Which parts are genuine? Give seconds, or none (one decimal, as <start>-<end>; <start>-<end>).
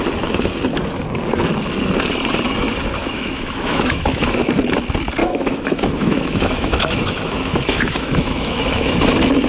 0.0-3.0; 4.5-5.2; 9.0-9.5